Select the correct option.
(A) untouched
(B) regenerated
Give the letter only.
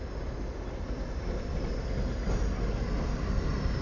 A